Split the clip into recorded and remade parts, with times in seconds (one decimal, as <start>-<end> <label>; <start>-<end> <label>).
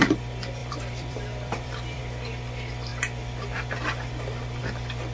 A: 0.0-0.6 recorded; 0.6-2.0 remade; 2.0-5.1 recorded